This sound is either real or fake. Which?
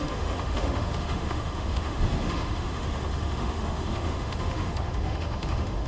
fake